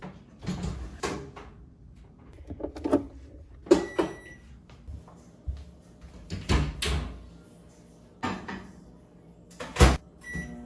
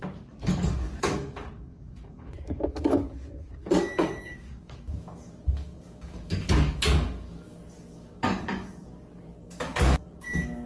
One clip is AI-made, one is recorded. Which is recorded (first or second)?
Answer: first